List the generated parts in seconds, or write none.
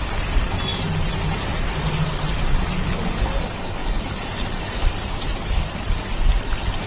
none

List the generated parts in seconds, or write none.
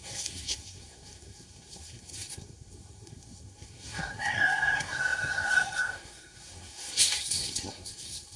0.0-8.4 (codec, SNAC)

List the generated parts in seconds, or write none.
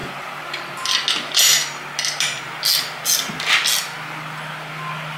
0.0-0.6 (vocoder, BigVGAN v2)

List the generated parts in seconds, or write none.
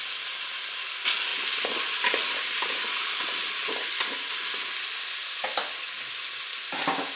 none